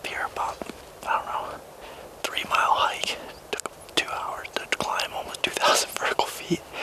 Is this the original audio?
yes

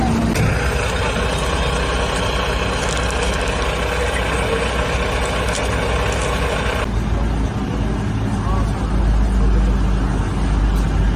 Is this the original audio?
yes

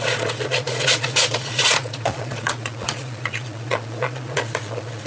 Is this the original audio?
no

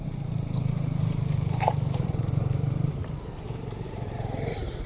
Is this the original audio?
no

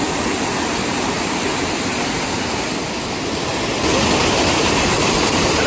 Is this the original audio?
yes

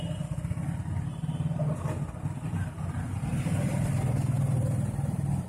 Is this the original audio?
no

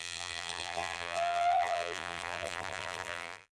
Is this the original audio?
no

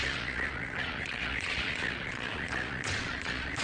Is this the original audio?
no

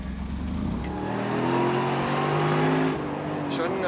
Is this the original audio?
yes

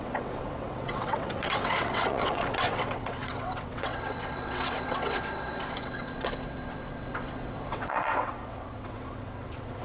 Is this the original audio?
no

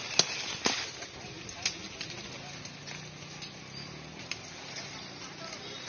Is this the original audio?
yes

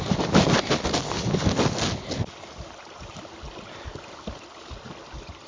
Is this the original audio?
yes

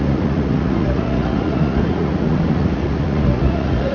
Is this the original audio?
no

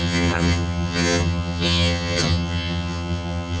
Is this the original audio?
no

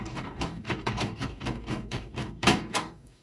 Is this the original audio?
no